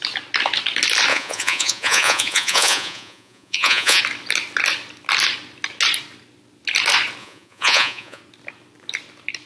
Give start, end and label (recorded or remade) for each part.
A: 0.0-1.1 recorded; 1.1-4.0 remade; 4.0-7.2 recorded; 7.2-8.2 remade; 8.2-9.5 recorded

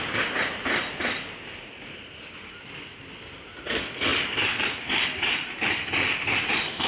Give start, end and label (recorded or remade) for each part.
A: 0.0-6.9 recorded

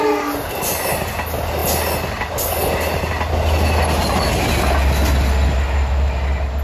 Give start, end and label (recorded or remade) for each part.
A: 0.0-6.6 recorded

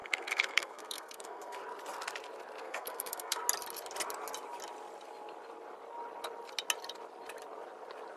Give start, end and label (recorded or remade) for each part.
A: 0.0-1.6 remade; 1.6-2.6 recorded; 2.6-3.4 remade; 3.4-8.2 recorded

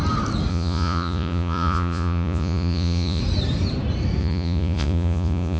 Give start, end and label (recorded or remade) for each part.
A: 0.0-0.5 recorded; 0.5-3.2 remade; 3.2-4.2 recorded; 4.2-5.6 remade

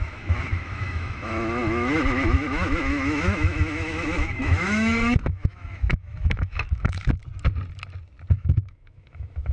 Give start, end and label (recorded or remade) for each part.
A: 0.0-7.2 remade; 7.2-8.3 recorded; 8.3-9.5 remade

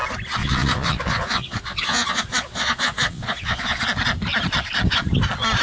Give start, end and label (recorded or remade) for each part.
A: 0.0-0.4 recorded; 0.4-3.8 remade; 3.8-5.6 recorded